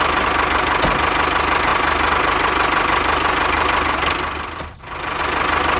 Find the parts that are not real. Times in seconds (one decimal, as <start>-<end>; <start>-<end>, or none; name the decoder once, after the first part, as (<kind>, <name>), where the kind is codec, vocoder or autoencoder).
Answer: none

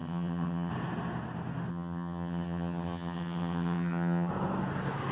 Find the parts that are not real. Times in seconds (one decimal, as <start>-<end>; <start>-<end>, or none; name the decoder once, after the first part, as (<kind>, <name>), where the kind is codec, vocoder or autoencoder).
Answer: 0.0-0.7 (vocoder, HiFi-GAN); 1.7-4.3

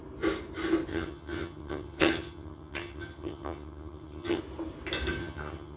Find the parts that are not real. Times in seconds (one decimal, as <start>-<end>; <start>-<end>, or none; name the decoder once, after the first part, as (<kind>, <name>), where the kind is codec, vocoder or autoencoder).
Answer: 0.9-4.4 (vocoder, HiFi-GAN); 5.2-5.8

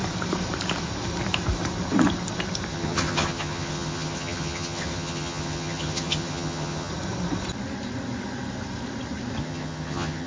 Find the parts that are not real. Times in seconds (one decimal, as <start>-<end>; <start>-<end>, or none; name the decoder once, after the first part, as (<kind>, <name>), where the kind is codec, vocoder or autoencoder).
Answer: 2.7-6.9 (vocoder, HiFi-GAN); 9.4-10.3

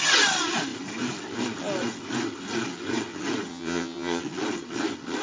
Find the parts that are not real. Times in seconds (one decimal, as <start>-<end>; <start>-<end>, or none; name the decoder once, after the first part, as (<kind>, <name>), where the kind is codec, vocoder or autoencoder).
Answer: 3.5-4.2 (vocoder, HiFi-GAN)